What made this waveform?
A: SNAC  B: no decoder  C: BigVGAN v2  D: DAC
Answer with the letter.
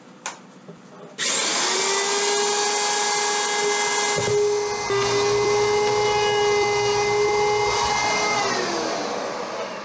B